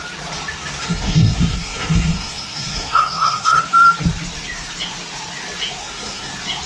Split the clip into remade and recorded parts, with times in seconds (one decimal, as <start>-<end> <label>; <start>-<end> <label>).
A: 0.0-0.8 recorded; 0.8-3.6 remade; 3.6-5.8 recorded; 5.8-6.3 remade; 6.3-6.7 recorded